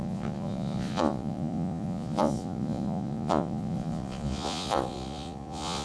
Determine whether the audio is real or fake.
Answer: fake